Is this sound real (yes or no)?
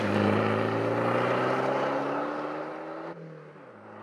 yes